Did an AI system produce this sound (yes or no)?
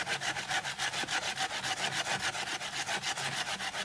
no